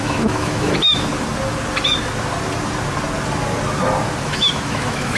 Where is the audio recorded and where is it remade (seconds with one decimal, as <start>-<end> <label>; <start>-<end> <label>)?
0.0-1.1 remade; 1.1-4.2 recorded; 4.2-5.2 remade